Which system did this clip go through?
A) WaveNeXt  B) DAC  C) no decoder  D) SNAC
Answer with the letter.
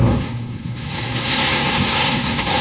D